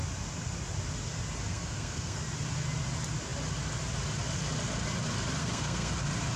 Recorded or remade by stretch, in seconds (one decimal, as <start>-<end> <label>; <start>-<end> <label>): 0.0-1.5 recorded; 1.5-2.2 remade; 2.2-5.4 recorded; 5.4-5.9 remade; 5.9-6.4 recorded